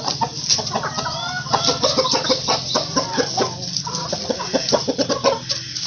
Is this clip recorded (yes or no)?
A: yes